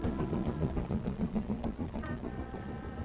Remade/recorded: remade